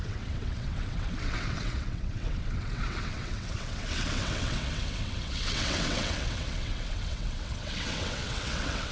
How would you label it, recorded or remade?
remade